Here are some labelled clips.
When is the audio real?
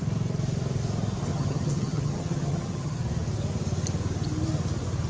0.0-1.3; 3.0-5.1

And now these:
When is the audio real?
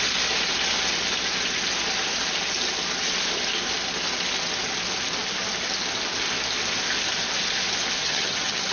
0.0-8.0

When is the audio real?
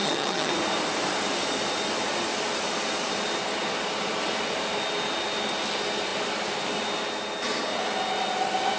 0.5-8.8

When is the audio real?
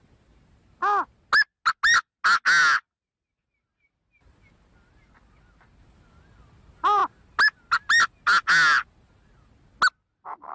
0.0-10.5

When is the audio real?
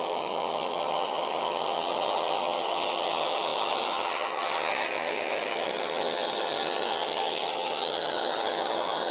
none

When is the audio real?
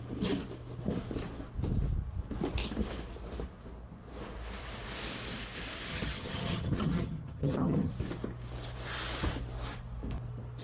0.0-5.9; 7.9-10.6